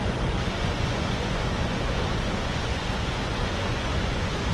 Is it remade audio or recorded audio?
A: remade